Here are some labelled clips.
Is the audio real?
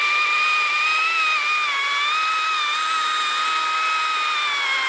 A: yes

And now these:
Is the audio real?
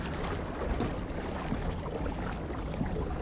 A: yes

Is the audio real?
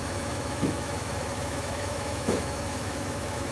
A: no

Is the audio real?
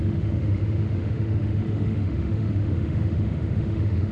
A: no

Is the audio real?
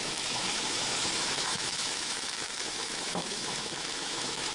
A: no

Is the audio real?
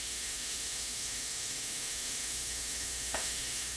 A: no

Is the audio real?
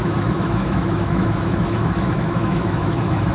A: no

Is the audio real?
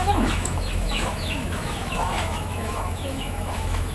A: no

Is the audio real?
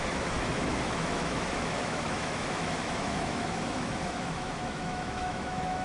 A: no